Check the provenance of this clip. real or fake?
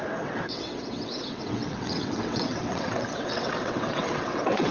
fake